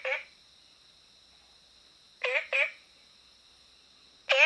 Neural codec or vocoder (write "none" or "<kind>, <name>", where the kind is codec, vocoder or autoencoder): none